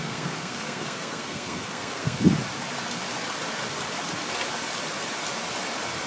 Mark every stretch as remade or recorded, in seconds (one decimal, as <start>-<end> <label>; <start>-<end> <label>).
0.0-2.3 remade; 2.3-6.1 recorded